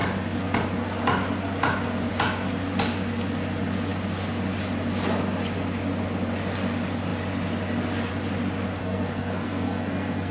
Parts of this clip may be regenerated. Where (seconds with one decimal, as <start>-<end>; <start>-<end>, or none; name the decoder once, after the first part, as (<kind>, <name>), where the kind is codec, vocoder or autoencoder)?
8.8-10.3 (codec, SNAC)

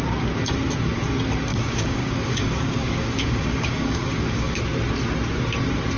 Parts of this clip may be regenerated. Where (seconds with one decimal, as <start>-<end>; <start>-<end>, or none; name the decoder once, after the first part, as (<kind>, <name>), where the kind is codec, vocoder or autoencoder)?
1.5-4.6 (codec, DAC)

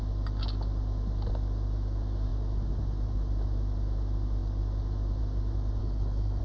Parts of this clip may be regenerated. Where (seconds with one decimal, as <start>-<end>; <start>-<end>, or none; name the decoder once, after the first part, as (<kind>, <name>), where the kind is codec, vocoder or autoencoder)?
5.8-6.4 (codec, HILCodec)

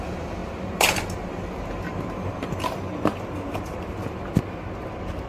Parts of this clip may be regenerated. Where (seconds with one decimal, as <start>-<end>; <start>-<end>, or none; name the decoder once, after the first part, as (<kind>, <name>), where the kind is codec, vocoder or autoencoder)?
none

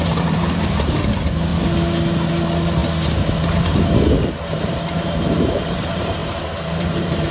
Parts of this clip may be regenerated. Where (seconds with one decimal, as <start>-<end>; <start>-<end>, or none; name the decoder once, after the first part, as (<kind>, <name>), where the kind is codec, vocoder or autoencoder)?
0.0-1.5 (vocoder, BigVGAN v2); 2.3-2.8; 3.6-7.3